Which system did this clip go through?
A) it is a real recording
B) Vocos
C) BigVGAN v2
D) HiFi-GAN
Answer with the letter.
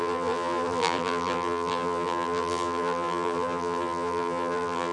C